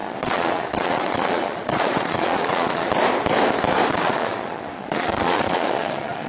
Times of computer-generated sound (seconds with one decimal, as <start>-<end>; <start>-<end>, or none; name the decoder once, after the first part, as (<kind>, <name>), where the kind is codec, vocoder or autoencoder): 0.0-2.9 (vocoder, Vocos); 3.9-6.3